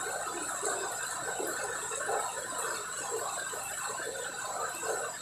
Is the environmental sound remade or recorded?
recorded